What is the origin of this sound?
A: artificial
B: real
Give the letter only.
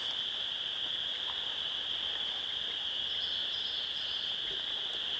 B